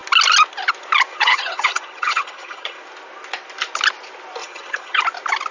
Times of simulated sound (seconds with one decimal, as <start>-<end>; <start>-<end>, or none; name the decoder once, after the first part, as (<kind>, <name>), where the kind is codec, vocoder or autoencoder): 1.1-2.8 (vocoder, HiFi-GAN); 4.4-5.0

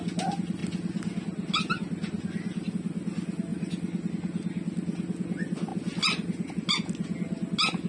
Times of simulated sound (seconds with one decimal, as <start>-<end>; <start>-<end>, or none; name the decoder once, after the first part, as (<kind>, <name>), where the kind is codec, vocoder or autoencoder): 3.5-4.1 (vocoder, BigVGAN v2)